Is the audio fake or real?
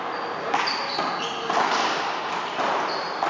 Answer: real